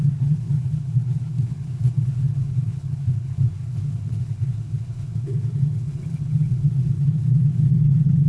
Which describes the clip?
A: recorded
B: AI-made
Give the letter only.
B